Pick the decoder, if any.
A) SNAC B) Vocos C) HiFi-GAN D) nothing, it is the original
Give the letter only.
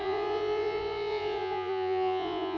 B